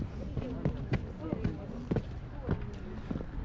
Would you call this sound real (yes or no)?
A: yes